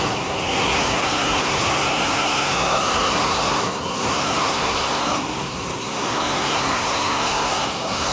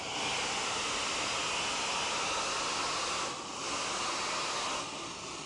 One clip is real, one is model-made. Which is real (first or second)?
second